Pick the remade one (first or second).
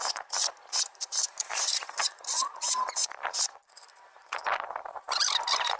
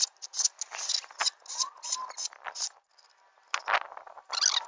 first